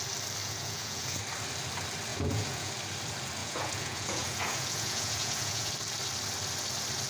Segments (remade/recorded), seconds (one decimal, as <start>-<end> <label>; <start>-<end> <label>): 0.0-0.4 recorded; 0.4-1.2 remade; 1.2-2.1 recorded; 2.1-2.7 remade; 2.7-3.4 recorded; 3.4-5.7 remade; 5.7-7.1 recorded